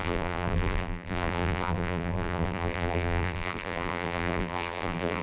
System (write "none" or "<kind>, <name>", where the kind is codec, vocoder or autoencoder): vocoder, BigVGAN v2